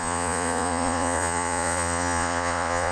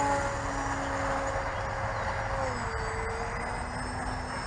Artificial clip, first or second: first